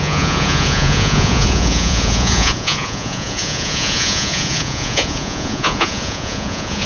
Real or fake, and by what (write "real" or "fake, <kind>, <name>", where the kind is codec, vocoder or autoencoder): fake, vocoder, Vocos